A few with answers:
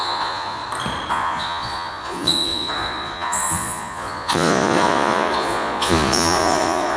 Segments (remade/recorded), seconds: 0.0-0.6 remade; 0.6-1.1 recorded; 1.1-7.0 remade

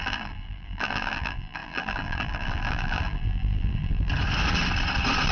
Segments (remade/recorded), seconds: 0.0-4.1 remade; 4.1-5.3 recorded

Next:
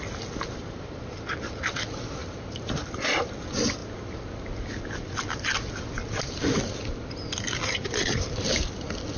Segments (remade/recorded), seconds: 0.0-2.2 recorded; 2.2-3.3 remade; 3.3-9.2 recorded